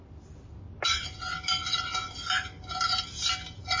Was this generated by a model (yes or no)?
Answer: no